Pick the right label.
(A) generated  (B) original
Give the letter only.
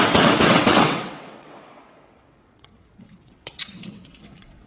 A